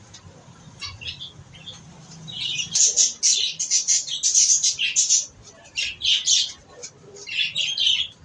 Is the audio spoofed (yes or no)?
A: no